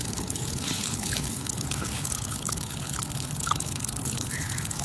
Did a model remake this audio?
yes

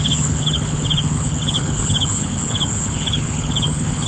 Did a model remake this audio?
yes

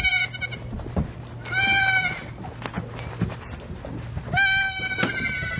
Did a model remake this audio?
no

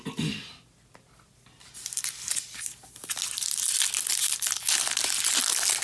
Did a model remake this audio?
no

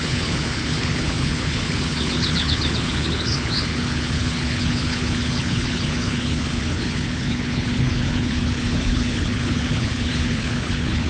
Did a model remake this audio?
yes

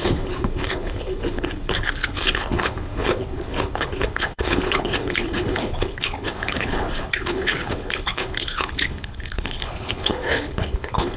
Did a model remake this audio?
yes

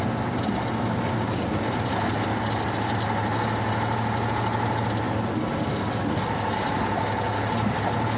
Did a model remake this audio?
no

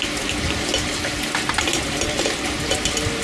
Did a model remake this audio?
no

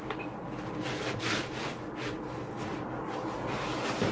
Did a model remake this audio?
no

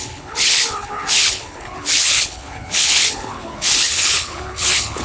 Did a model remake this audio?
yes